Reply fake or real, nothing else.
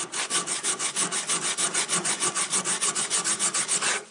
fake